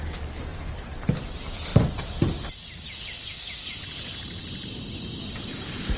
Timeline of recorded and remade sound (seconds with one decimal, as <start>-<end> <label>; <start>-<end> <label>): 0.0-0.5 recorded; 0.5-1.0 remade; 1.0-6.0 recorded